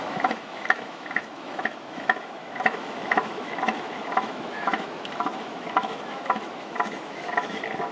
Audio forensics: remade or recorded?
remade